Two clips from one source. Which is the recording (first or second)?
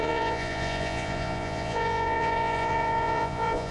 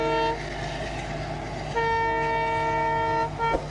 second